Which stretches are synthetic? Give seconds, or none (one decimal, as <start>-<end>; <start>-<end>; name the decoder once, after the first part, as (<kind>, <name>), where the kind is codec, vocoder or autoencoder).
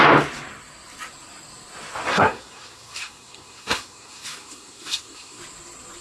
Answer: 2.1-5.4 (codec, SNAC)